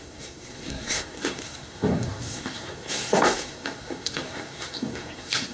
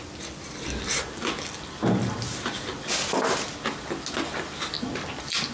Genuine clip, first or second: second